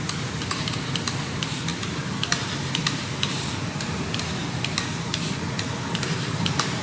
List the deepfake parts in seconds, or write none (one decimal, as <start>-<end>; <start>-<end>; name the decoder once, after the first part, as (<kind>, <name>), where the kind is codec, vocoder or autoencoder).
0.0-4.4 (vocoder, BigVGAN v2); 5.5-6.8